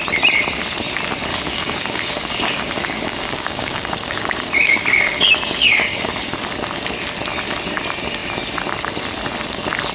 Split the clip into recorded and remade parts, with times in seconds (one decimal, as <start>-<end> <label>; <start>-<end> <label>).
0.0-1.3 recorded; 1.3-6.1 remade; 6.1-9.9 recorded